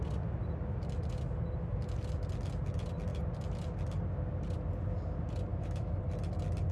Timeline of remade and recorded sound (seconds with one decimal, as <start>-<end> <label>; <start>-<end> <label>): 0.0-5.5 recorded; 5.5-6.0 remade; 6.0-6.7 recorded